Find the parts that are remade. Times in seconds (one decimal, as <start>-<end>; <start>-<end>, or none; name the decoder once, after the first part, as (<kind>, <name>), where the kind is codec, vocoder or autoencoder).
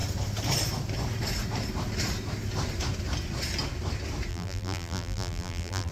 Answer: 4.3-5.9 (vocoder, BigVGAN v2)